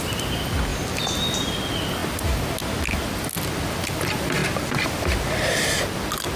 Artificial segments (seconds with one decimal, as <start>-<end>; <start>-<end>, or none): 4.4-4.9